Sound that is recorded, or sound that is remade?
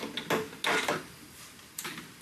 recorded